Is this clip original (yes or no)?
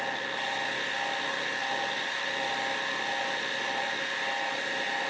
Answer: yes